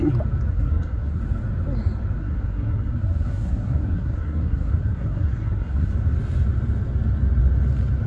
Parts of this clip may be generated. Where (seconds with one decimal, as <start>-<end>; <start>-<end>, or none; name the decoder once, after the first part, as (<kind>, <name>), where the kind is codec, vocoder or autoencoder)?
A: 0.5-1.2 (codec, SNAC); 2.2-5.9